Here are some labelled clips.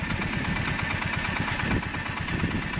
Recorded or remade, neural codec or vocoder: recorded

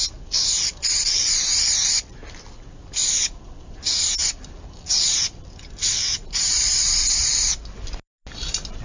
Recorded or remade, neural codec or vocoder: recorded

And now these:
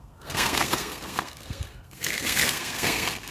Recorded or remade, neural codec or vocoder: remade, codec, SNAC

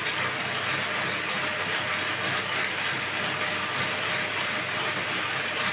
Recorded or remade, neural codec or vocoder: recorded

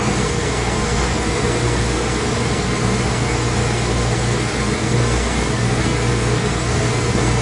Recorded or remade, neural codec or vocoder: remade, codec, SNAC